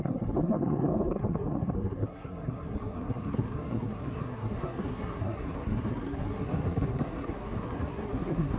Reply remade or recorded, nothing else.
remade